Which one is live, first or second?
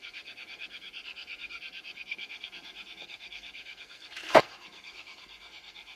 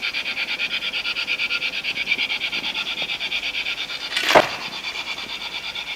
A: second